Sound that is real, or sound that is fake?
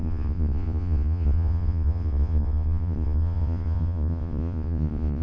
fake